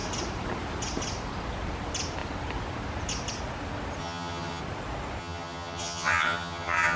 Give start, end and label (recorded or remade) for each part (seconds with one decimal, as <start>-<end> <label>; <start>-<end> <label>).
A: 0.0-4.0 recorded; 4.0-4.6 remade; 4.6-5.2 recorded; 5.2-7.0 remade

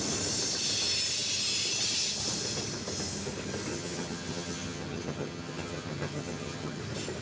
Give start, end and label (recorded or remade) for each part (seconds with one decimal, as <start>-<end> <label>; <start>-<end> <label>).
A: 0.0-3.7 recorded; 3.7-6.8 remade; 6.8-7.2 recorded

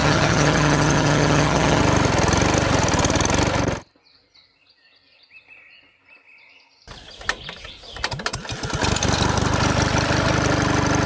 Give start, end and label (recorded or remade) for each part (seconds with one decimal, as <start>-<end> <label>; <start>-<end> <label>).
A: 0.0-1.8 remade; 1.8-11.1 recorded

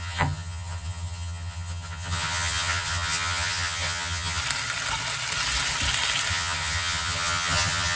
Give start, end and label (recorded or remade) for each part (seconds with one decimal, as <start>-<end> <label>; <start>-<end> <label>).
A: 0.0-4.4 remade; 4.4-6.3 recorded; 6.3-8.0 remade

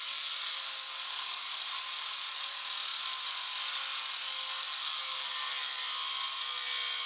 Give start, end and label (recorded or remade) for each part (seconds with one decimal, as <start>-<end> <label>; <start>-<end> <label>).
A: 0.0-7.1 recorded

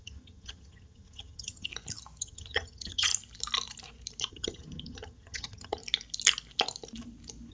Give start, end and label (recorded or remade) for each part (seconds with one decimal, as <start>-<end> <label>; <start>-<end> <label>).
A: 0.0-1.7 remade; 1.7-2.2 recorded; 2.2-3.1 remade; 3.1-4.3 recorded; 4.3-5.8 remade; 5.8-7.5 recorded